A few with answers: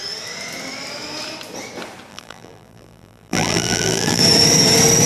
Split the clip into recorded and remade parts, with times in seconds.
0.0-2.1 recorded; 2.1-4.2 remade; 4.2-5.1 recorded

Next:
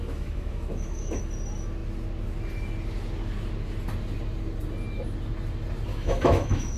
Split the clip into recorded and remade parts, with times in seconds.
0.0-1.2 remade; 1.2-5.9 recorded; 5.9-6.8 remade

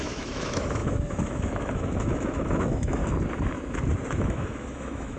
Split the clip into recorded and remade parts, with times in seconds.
0.0-3.0 remade; 3.0-4.1 recorded; 4.1-5.2 remade

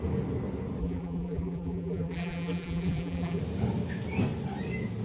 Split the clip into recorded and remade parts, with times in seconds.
0.0-0.8 recorded; 0.8-3.4 remade; 3.4-5.0 recorded